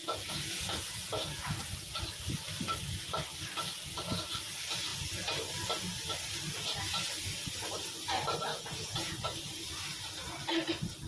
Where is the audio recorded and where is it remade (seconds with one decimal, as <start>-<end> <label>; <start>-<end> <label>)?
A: 0.0-1.6 remade; 1.6-8.5 recorded; 8.5-9.2 remade; 9.2-11.1 recorded